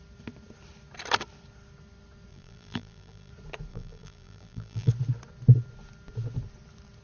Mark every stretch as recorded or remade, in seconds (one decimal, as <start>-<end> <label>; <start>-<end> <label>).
0.0-2.3 recorded; 2.3-3.3 remade; 3.3-3.7 recorded; 3.7-4.9 remade; 4.9-7.0 recorded